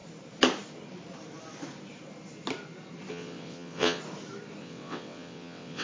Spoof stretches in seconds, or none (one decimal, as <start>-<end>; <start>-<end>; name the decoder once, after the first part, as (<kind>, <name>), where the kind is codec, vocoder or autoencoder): 3.1-4.0 (vocoder, WaveNeXt); 4.6-5.8